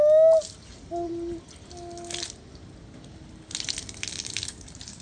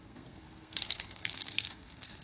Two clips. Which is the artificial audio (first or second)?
second